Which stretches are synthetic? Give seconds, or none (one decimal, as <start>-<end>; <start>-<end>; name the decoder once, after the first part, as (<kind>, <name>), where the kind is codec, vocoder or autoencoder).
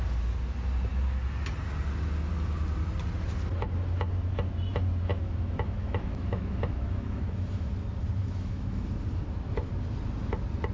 5.1-7.7 (autoencoder, DAC-VAE); 8.2-8.9